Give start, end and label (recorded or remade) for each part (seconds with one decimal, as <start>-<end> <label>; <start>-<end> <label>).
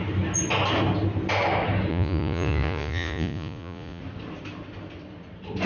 0.0-1.9 recorded; 1.9-4.0 remade; 4.0-5.7 recorded